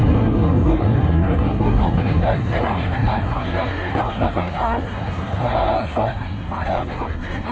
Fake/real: fake